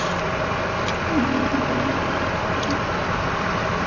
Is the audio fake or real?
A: real